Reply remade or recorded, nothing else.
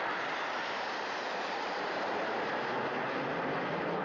remade